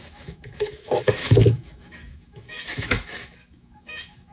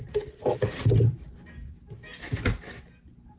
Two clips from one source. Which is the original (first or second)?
second